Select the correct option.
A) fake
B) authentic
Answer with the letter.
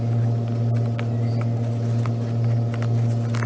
B